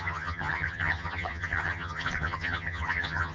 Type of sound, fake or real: fake